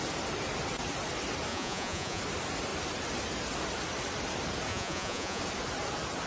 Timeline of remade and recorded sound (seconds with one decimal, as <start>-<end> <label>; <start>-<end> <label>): 0.0-1.5 recorded; 1.5-2.2 remade; 2.2-4.7 recorded; 4.7-5.4 remade; 5.4-6.3 recorded